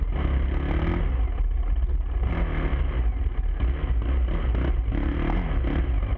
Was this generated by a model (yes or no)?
no